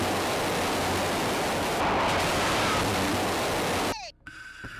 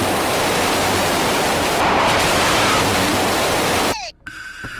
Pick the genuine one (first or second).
first